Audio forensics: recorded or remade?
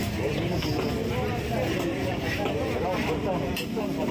recorded